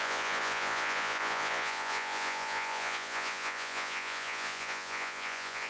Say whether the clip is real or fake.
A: fake